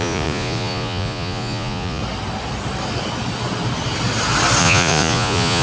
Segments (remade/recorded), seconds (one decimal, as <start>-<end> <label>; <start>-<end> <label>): 0.0-2.0 remade; 2.0-4.6 recorded; 4.6-5.6 remade